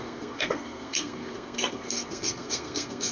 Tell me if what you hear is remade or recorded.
remade